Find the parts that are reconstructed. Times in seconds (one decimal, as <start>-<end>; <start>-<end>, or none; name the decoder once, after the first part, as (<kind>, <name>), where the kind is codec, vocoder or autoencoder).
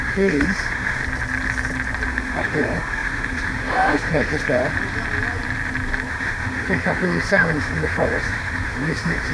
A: 0.0-1.0 (autoencoder, DAC-VAE); 2.1-4.6; 6.1-9.3